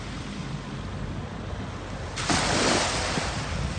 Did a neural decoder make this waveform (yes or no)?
no